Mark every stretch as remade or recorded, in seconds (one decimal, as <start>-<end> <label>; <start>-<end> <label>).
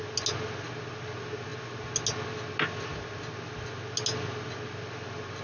0.0-5.4 recorded